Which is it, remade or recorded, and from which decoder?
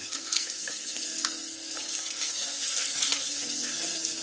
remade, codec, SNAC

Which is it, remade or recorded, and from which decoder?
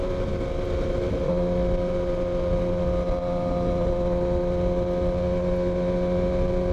recorded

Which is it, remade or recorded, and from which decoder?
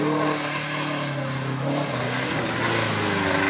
recorded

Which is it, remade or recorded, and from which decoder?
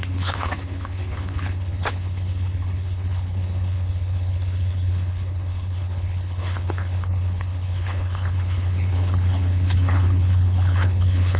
remade, codec, HILCodec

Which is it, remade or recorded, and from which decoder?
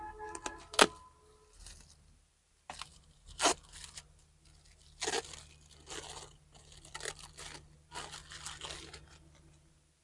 recorded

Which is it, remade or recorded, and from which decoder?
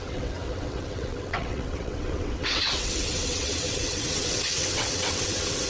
remade, vocoder, WaveNeXt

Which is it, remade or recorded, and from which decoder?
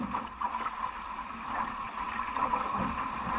recorded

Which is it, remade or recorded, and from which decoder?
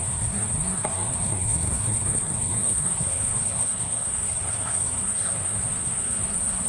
remade, codec, SNAC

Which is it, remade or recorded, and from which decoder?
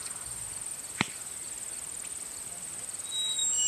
recorded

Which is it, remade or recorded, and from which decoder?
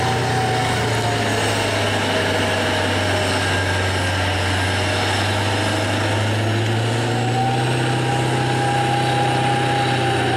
recorded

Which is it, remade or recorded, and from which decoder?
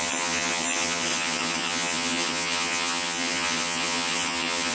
remade, vocoder, HiFi-GAN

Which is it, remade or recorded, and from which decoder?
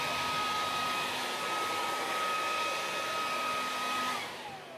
recorded